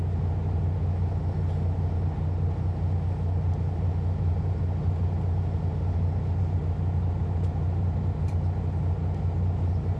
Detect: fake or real real